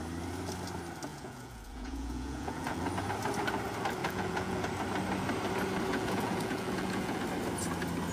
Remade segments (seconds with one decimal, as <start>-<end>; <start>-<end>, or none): 1.1-2.9; 4.0-4.6; 5.9-7.2